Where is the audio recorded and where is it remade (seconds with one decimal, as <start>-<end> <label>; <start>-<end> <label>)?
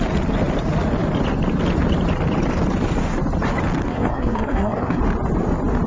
0.0-3.9 recorded; 3.9-5.0 remade; 5.0-5.9 recorded